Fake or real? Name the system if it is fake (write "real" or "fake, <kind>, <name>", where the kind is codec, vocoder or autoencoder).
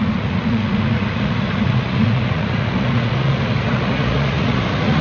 fake, vocoder, Vocos